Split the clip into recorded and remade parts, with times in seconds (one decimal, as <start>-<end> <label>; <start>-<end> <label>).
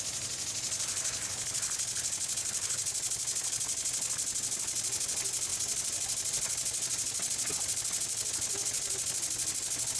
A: 0.0-10.0 recorded